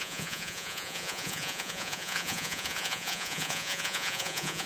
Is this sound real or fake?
fake